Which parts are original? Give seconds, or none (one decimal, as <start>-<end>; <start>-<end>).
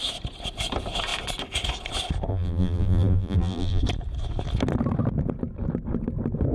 0.0-2.3; 3.8-6.5